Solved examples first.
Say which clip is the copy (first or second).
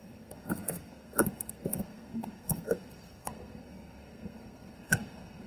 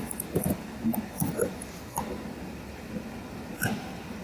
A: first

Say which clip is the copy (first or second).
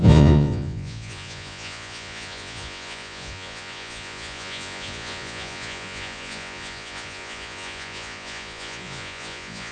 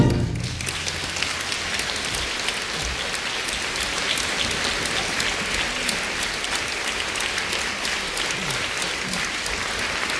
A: first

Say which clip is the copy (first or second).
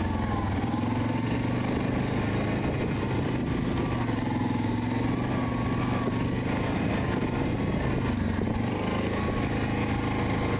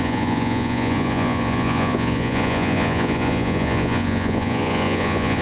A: second